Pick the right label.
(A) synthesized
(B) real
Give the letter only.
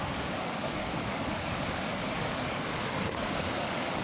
A